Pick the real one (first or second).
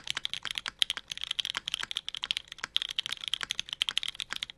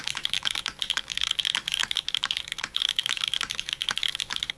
first